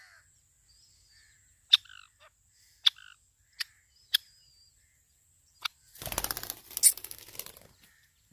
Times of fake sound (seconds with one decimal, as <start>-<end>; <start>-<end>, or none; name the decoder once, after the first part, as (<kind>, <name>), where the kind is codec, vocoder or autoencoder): none